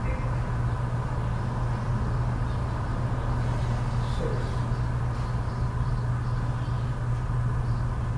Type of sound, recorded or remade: recorded